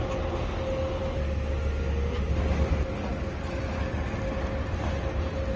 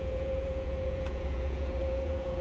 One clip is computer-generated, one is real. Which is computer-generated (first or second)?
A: second